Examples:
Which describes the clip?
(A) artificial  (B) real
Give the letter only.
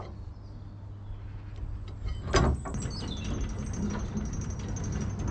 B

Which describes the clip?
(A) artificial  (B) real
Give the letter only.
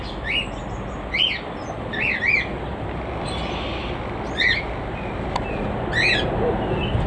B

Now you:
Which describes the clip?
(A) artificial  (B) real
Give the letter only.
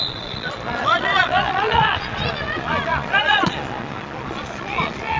A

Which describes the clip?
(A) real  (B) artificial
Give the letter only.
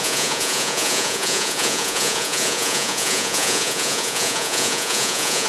B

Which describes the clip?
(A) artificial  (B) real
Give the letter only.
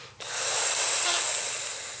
B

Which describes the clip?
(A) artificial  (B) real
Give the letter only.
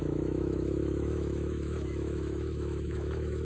A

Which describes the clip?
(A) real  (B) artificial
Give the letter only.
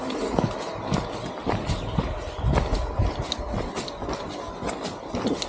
A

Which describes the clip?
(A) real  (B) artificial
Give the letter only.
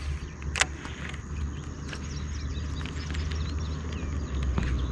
A